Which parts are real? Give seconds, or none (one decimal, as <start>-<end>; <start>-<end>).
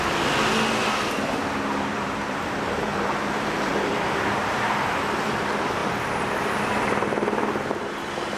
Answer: 0.0-1.4; 4.4-8.4